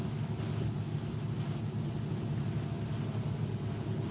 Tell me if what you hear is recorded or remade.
recorded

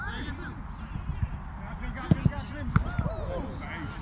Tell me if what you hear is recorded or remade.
recorded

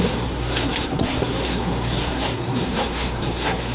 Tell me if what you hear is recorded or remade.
remade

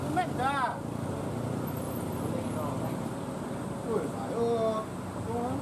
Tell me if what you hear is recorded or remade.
recorded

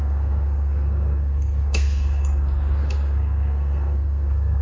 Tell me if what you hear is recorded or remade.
remade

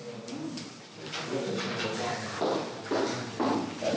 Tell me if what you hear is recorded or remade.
recorded